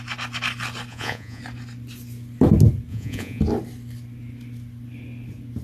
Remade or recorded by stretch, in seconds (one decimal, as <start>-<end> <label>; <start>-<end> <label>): 0.0-0.9 recorded; 0.9-1.4 remade; 1.4-2.9 recorded; 2.9-3.4 remade; 3.4-5.6 recorded